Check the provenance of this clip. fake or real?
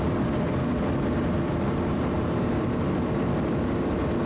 real